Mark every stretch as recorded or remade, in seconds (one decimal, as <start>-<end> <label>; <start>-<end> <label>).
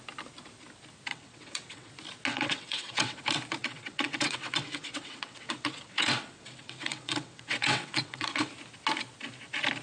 0.0-1.1 recorded; 1.1-1.9 remade; 1.9-2.3 recorded; 2.3-3.2 remade; 3.2-3.6 recorded; 3.6-8.5 remade; 8.5-9.8 recorded